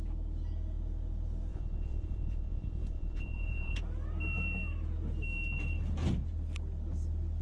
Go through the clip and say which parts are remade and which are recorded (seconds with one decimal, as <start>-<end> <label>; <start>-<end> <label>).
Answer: 0.0-1.5 recorded; 1.5-3.8 remade; 3.8-7.4 recorded